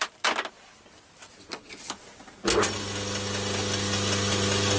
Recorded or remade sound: recorded